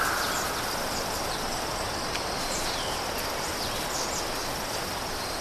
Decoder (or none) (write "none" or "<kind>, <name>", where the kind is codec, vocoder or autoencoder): none